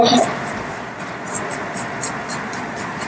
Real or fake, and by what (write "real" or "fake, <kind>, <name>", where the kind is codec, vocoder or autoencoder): fake, vocoder, Vocos